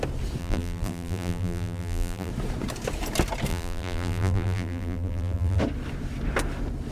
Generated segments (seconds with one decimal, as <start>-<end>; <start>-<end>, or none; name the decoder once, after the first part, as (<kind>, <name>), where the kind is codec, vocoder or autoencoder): 0.4-2.3 (vocoder, BigVGAN v2); 3.5-5.6